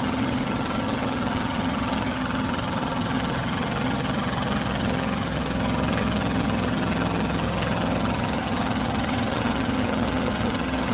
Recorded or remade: remade